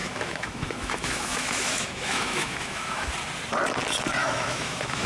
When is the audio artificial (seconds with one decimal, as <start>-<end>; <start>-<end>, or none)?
0.0-3.1; 4.2-5.1